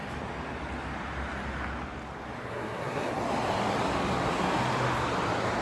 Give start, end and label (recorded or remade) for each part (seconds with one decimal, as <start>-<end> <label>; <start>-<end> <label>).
0.0-2.5 recorded; 2.5-3.1 remade; 3.1-5.6 recorded